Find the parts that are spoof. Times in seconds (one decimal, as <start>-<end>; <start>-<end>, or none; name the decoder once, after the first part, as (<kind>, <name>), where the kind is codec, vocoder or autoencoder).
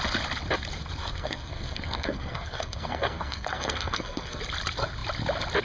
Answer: 1.0-4.4 (codec, SNAC)